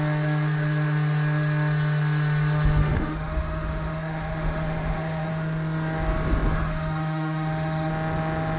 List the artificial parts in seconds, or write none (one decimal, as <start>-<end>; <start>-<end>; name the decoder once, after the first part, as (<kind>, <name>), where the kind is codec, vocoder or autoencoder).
2.8-5.3 (autoencoder, DAC-VAE); 6.5-7.9